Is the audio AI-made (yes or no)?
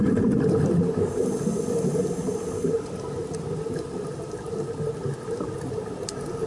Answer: no